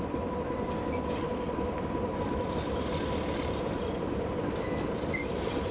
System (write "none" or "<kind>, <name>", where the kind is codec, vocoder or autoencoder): none